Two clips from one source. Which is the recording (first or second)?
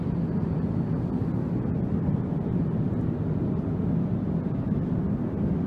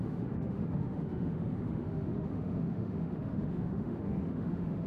first